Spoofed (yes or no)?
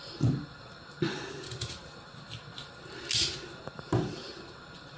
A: no